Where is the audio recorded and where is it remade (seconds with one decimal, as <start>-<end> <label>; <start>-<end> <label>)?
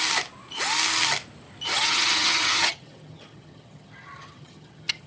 0.0-1.7 recorded; 1.7-5.1 remade